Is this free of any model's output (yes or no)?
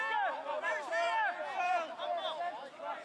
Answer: yes